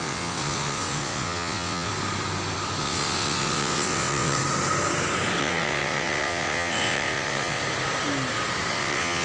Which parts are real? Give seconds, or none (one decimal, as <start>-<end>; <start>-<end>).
1.9-2.8; 4.4-5.4; 7.6-8.7